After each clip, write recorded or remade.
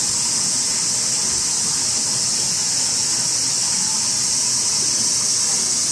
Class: recorded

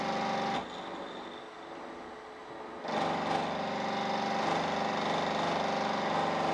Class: recorded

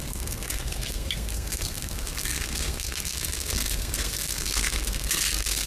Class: remade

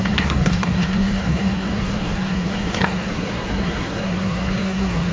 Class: remade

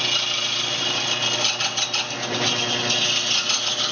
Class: recorded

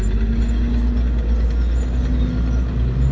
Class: recorded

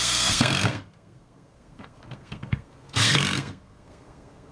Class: remade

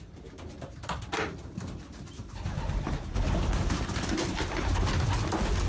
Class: recorded